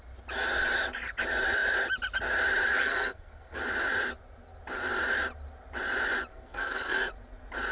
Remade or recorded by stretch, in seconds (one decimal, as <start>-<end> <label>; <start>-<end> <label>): 0.0-2.8 recorded; 2.8-3.6 remade; 3.6-6.3 recorded; 6.3-7.1 remade; 7.1-7.7 recorded